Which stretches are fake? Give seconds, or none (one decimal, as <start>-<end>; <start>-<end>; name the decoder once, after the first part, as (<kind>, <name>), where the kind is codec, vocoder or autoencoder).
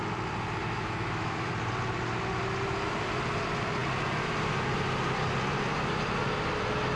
0.6-1.5 (autoencoder, DAC-VAE)